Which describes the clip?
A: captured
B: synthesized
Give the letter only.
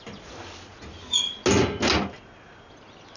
A